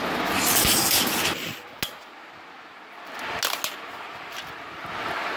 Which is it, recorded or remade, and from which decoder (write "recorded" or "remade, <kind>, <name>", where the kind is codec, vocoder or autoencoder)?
recorded